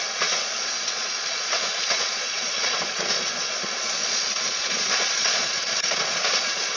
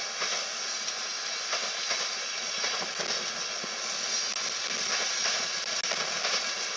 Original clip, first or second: second